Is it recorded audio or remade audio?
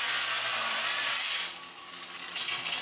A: recorded